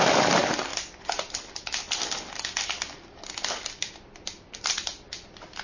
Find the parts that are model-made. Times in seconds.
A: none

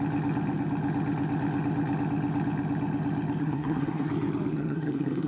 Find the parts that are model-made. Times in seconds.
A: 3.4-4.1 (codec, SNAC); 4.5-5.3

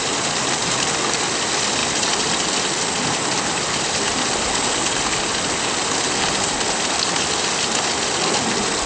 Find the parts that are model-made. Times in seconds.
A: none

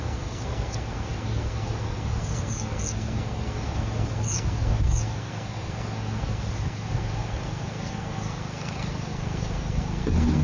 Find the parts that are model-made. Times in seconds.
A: 0.0-10.4 (codec, SNAC)

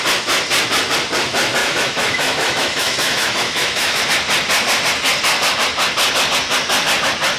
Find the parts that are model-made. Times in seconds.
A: 1.6-4.0 (autoencoder, DAC-VAE)